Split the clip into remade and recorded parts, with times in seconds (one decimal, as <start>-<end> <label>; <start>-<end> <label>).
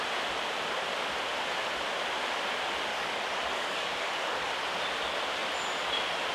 0.0-2.9 recorded; 2.9-4.5 remade; 4.5-6.3 recorded